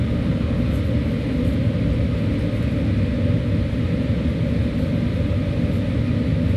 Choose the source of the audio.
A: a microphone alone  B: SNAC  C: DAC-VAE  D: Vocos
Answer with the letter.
A